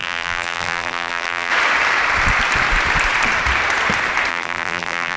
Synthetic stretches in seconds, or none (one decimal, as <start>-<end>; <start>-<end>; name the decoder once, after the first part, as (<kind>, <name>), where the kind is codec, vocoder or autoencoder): 0.0-1.5 (vocoder, BigVGAN v2); 4.3-5.2